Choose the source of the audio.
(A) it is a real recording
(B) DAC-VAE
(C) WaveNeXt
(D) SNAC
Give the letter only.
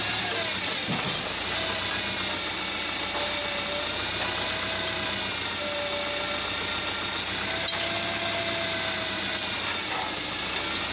A